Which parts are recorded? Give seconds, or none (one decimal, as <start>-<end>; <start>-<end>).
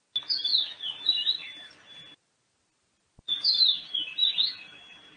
0.0-5.2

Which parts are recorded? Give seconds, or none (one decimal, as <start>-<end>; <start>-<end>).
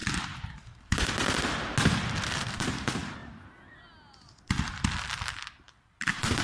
0.0-2.4; 3.2-5.6